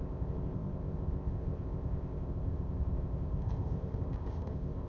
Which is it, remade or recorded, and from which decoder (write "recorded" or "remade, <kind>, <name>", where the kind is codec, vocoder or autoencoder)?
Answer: remade, codec, ZipCodec